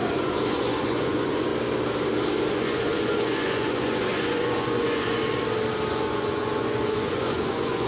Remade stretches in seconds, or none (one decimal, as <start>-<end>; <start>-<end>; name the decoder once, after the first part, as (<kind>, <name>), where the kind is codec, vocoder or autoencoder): 0.0-1.5 (vocoder, Vocos); 2.5-5.2; 5.9-7.9